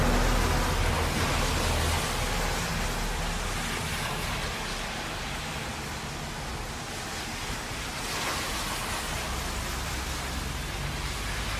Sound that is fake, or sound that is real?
real